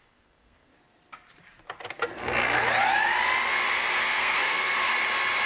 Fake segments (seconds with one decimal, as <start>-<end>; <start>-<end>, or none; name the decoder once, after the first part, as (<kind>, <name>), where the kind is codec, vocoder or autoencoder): 0.0-0.7 (codec, SNAC); 4.0-4.9